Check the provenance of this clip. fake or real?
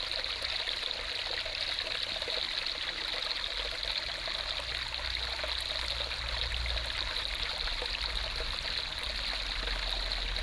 real